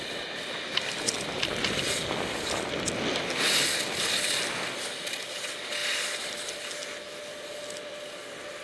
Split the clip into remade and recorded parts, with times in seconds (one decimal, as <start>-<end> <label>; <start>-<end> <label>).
0.0-8.6 recorded